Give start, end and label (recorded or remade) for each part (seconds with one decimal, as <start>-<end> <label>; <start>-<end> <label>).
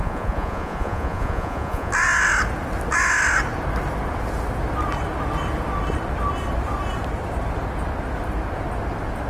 0.0-1.9 remade; 1.9-9.3 recorded